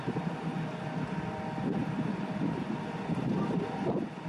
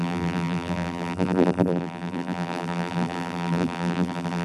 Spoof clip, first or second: second